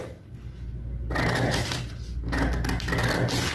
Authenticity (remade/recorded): recorded